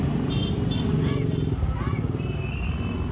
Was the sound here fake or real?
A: real